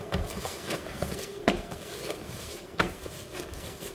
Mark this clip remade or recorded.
remade